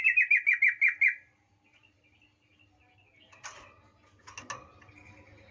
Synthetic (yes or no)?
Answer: no